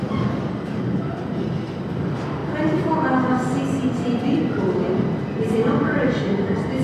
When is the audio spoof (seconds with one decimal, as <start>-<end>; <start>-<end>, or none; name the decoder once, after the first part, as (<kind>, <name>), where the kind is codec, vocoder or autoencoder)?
none